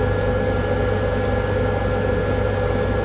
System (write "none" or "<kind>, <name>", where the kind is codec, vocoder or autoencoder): none